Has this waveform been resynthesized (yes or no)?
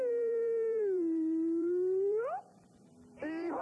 yes